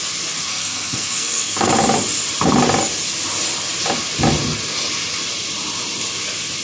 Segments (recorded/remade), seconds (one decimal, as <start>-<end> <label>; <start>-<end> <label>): 0.0-0.5 recorded; 0.5-1.7 remade; 1.7-6.6 recorded